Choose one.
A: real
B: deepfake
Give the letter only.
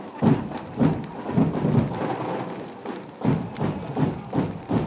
A